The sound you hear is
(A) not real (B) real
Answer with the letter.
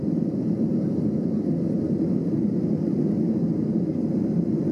B